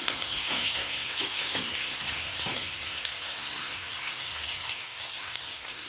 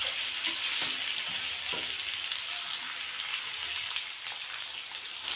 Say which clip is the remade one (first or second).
first